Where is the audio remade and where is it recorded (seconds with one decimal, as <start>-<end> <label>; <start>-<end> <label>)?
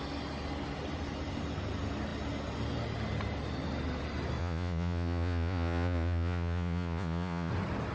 0.0-4.4 recorded; 4.4-7.5 remade; 7.5-7.9 recorded